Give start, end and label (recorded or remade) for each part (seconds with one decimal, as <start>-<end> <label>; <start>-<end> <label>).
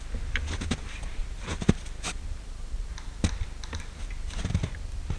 0.0-5.2 recorded